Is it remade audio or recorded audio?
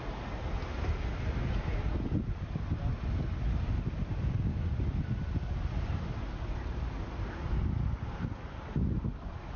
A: recorded